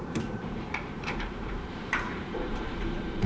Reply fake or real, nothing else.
fake